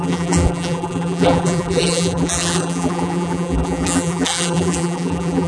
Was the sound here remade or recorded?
remade